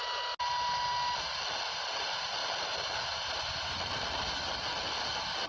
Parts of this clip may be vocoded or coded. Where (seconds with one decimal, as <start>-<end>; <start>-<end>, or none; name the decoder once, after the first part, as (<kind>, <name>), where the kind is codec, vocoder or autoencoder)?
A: 2.4-3.0 (vocoder, BigVGAN v2)